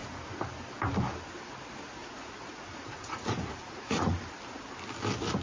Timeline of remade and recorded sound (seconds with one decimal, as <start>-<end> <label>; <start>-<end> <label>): 0.0-2.0 recorded; 2.0-4.2 remade; 4.2-5.4 recorded